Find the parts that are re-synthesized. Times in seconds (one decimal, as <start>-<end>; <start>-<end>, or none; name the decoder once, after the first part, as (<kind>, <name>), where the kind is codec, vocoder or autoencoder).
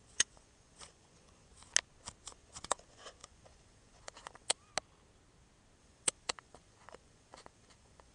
0.0-1.6 (vocoder, Vocos); 2.2-4.7; 5.8-8.1